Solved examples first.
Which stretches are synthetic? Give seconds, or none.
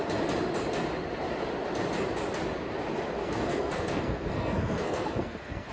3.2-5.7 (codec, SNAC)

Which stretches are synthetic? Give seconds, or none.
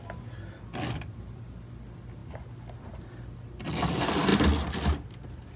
none